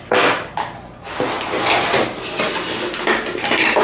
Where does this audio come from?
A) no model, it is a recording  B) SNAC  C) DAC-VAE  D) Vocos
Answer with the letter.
A